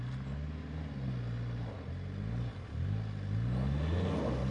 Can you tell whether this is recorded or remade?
recorded